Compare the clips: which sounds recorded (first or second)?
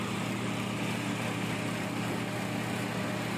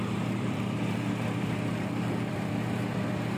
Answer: first